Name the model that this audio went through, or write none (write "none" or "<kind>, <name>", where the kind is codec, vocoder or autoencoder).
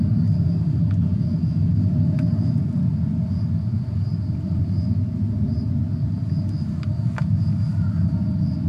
none